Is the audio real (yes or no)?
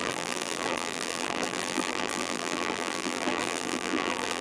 no